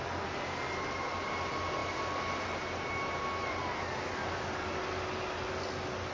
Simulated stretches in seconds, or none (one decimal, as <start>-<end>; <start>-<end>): none